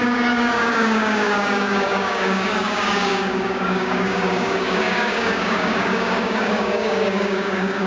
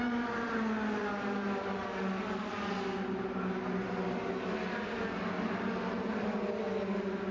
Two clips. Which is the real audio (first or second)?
second